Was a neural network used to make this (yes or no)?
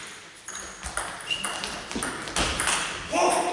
no